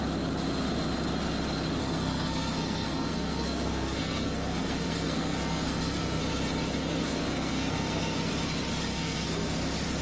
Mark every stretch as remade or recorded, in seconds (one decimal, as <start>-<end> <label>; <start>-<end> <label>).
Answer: 0.0-1.8 recorded; 1.8-6.2 remade; 6.2-6.8 recorded; 6.8-8.3 remade; 8.3-8.9 recorded; 8.9-9.5 remade; 9.5-10.0 recorded